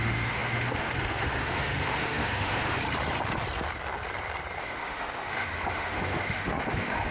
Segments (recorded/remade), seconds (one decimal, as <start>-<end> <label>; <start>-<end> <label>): 0.0-2.8 remade; 2.8-4.6 recorded; 4.6-7.1 remade